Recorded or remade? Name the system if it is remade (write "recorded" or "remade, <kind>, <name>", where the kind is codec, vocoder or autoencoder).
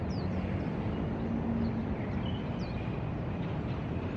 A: recorded